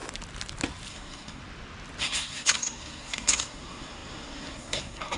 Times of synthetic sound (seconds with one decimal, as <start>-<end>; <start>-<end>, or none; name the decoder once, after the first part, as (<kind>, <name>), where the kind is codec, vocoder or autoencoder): 0.9-1.4 (codec, SNAC); 2.0-5.2